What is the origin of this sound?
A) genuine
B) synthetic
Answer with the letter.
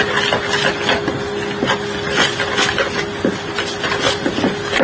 A